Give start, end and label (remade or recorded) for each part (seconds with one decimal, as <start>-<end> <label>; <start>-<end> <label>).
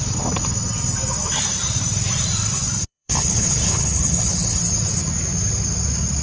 0.0-2.8 recorded; 2.8-4.6 remade; 4.6-6.2 recorded